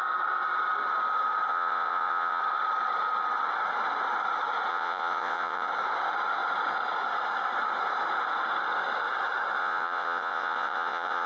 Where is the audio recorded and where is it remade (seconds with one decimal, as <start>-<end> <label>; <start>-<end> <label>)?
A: 0.0-1.5 recorded; 1.5-2.4 remade; 2.4-4.7 recorded; 4.7-5.7 remade; 5.7-9.6 recorded; 9.6-11.3 remade

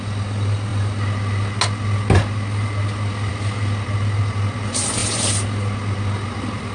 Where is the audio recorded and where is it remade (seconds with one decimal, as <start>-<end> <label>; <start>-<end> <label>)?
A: 0.0-6.7 recorded